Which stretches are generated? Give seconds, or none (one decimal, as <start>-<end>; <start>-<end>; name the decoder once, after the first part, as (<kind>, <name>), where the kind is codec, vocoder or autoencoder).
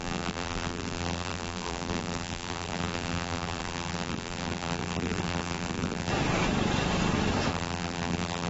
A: 0.0-6.1 (vocoder, BigVGAN v2); 7.5-8.5